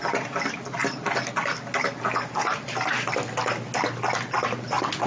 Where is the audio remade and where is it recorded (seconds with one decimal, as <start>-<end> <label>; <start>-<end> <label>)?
0.0-5.1 recorded